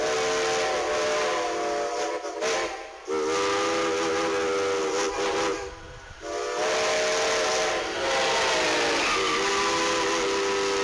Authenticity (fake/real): real